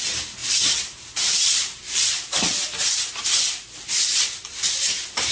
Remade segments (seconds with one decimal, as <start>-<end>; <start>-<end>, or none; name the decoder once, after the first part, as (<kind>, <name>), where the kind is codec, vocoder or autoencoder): 0.4-2.1 (vocoder, BigVGAN v2)